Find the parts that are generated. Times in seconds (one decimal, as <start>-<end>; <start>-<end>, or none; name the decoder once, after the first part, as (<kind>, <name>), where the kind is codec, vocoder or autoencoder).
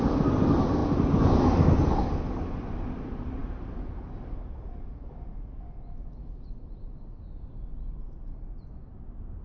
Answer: none